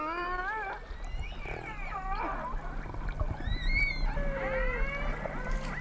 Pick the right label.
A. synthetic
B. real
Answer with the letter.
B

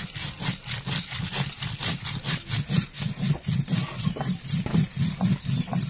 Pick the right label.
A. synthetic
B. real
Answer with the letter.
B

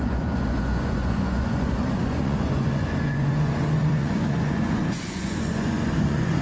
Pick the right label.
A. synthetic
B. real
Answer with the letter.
A